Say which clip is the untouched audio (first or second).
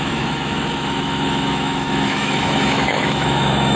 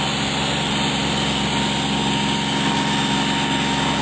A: second